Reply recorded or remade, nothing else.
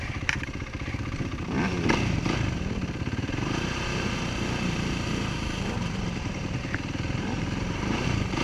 remade